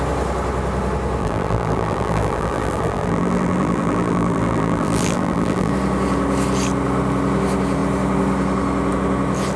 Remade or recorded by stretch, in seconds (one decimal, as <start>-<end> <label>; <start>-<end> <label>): 0.0-1.2 recorded; 1.2-5.7 remade; 5.7-9.6 recorded